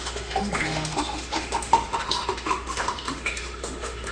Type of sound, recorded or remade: remade